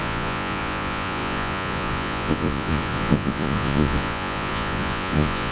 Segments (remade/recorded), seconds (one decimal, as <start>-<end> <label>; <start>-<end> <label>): 0.0-5.5 remade